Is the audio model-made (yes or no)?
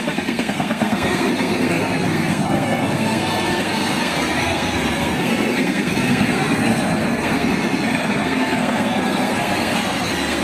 yes